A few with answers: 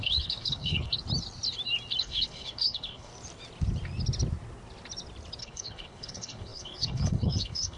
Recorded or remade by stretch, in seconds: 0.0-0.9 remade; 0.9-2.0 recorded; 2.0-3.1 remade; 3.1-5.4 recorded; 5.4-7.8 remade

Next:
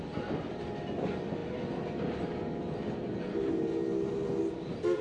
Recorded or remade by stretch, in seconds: 0.0-5.0 recorded